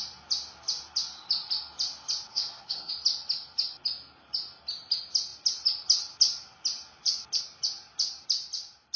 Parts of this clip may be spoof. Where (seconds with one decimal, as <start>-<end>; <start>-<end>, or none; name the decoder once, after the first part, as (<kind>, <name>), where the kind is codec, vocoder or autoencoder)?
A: 2.3-2.9 (codec, SNAC)